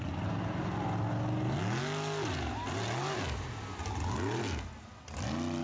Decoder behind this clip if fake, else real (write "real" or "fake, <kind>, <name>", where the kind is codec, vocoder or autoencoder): real